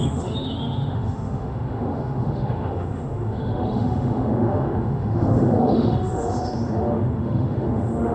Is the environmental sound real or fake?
fake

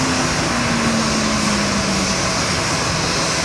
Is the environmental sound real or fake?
real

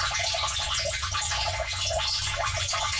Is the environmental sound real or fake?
fake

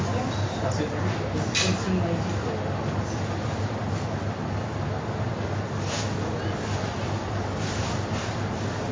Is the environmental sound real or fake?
real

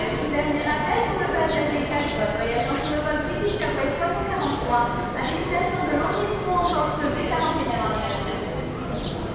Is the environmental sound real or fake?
real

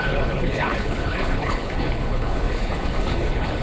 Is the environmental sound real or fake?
fake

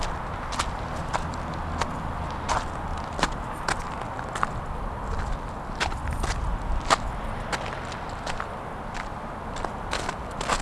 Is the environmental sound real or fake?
real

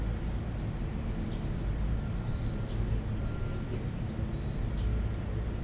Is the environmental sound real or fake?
real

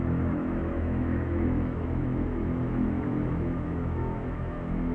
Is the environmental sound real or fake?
fake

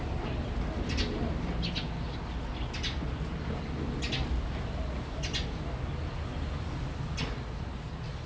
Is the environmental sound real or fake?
real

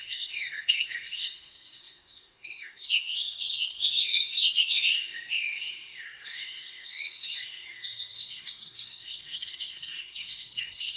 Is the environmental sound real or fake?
fake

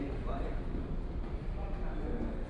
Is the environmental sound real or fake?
real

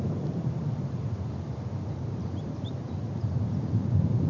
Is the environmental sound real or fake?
fake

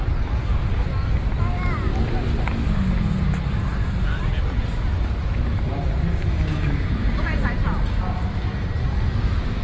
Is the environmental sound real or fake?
real